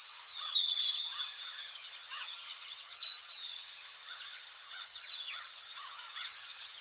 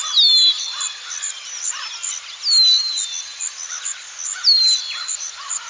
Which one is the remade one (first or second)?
first